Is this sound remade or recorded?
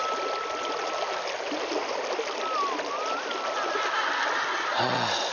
recorded